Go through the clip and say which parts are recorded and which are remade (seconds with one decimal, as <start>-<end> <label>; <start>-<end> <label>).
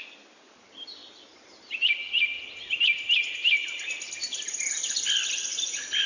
0.0-6.1 recorded